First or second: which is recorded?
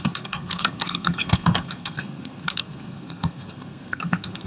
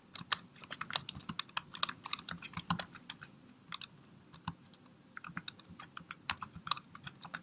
second